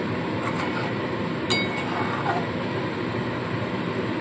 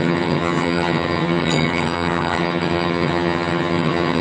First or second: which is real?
first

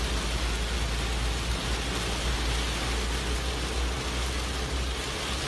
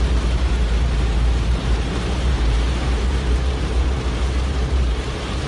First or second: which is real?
first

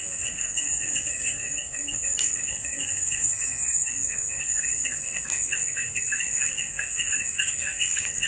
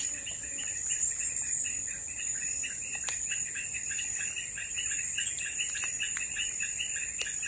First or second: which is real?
second